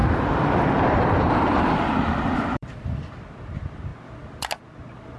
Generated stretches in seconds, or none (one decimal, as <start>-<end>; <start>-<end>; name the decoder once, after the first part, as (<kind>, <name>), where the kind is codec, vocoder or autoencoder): 0.0-3.1 (vocoder, BigVGAN v2)